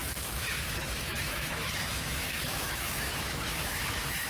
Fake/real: fake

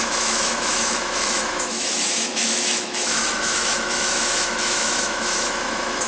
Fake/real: fake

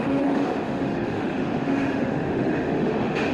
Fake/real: fake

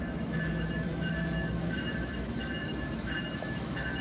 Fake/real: fake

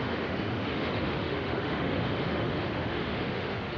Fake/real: fake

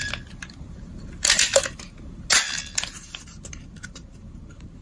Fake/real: real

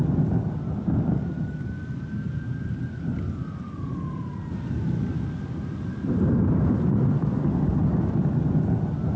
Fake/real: real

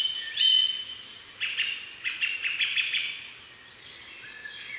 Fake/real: real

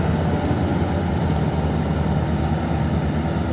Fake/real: real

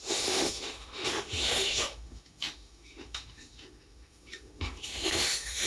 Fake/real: fake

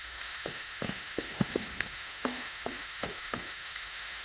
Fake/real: fake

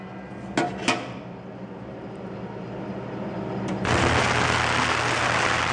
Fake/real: real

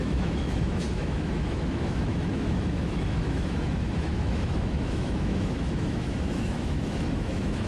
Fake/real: fake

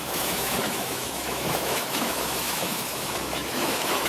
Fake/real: fake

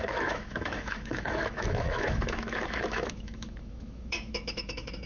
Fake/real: fake